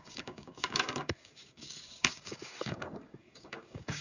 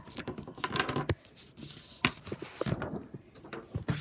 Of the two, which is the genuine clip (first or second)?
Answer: second